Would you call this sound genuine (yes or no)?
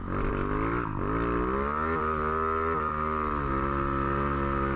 yes